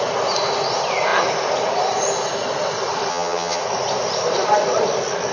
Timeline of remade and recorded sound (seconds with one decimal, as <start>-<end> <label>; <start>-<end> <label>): 0.0-3.1 recorded; 3.1-3.6 remade; 3.6-5.3 recorded

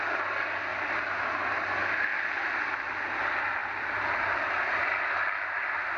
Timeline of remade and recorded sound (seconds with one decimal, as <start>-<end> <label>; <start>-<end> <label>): 0.0-0.7 recorded; 0.7-1.2 remade; 1.2-2.1 recorded; 2.1-3.1 remade; 3.1-3.6 recorded; 3.6-5.0 remade; 5.0-6.0 recorded

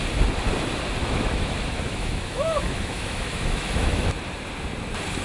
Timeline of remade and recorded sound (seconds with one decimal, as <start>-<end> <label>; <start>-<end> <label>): 0.0-1.0 recorded; 1.0-4.1 remade; 4.1-5.2 recorded

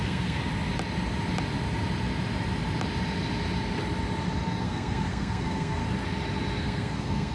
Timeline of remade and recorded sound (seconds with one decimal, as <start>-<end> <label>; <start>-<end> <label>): 0.0-0.4 remade; 0.4-4.6 recorded; 4.6-5.8 remade; 5.8-6.6 recorded; 6.6-7.3 remade

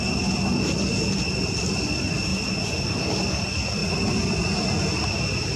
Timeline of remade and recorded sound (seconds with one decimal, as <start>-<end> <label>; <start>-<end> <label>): 0.0-2.3 recorded; 2.3-3.3 remade; 3.3-3.8 recorded; 3.8-5.6 remade

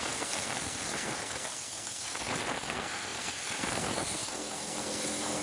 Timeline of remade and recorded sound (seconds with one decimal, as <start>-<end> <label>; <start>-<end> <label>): 0.0-5.4 remade